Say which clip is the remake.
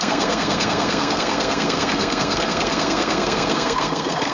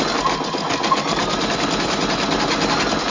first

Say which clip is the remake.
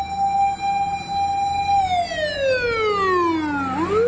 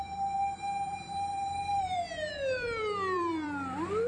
second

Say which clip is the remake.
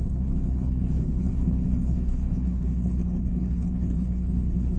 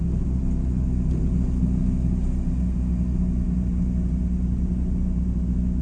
first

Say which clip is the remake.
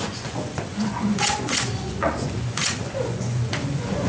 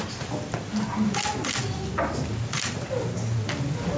first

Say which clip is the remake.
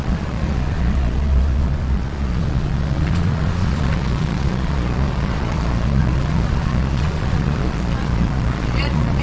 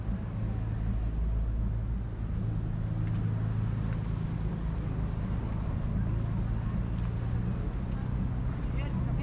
first